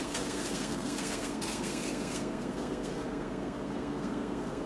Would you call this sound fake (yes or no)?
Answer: yes